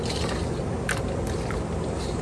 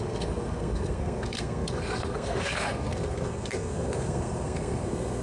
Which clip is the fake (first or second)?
second